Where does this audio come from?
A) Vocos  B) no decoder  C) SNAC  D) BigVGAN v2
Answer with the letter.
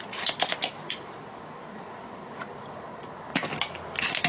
B